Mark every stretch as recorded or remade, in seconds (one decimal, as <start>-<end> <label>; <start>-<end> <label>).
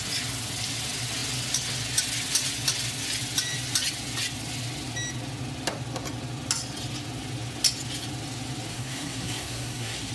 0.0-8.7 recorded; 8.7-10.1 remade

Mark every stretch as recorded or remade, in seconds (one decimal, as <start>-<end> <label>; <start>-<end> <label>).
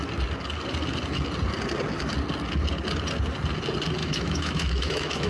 0.0-4.0 recorded; 4.0-5.3 remade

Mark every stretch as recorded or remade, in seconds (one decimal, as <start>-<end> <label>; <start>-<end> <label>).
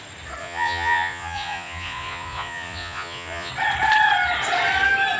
0.0-0.4 recorded; 0.4-3.5 remade; 3.5-5.2 recorded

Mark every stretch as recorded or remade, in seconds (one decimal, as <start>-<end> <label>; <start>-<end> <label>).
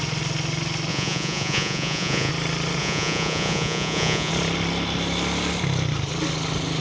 0.0-0.9 recorded; 0.9-2.3 remade; 2.3-2.8 recorded; 2.8-4.3 remade; 4.3-6.8 recorded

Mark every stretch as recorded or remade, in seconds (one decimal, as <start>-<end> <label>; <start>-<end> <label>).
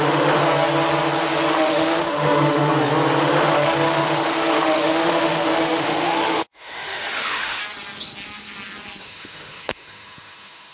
0.0-0.4 remade; 0.4-1.5 recorded; 1.5-2.7 remade; 2.7-3.2 recorded; 3.2-7.6 remade; 7.6-9.0 recorded; 9.0-10.7 remade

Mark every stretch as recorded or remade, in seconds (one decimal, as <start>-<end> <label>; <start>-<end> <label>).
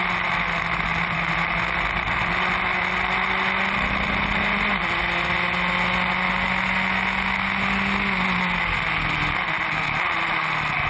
0.0-10.9 recorded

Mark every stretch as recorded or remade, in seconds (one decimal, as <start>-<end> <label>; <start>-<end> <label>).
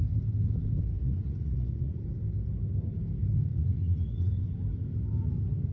0.0-1.0 recorded; 1.0-2.0 remade; 2.0-3.5 recorded; 3.5-4.3 remade; 4.3-5.7 recorded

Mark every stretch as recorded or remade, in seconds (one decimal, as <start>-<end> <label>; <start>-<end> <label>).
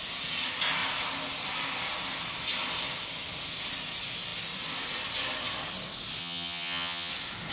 0.0-6.2 recorded; 6.2-7.1 remade; 7.1-7.5 recorded